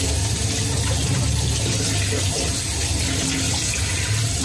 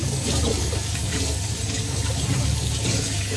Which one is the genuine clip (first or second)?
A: first